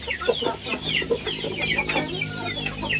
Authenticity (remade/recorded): recorded